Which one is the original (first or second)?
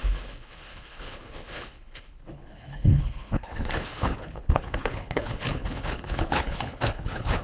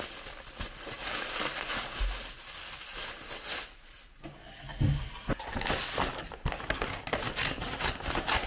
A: second